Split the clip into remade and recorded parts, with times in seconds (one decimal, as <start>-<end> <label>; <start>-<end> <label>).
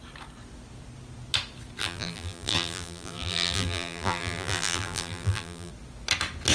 0.0-1.8 recorded; 1.8-5.7 remade; 5.7-6.5 recorded